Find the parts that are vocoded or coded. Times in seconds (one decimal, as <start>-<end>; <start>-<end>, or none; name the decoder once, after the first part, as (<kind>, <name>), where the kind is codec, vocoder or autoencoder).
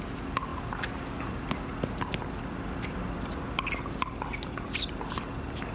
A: none